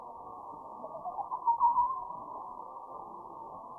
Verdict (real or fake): fake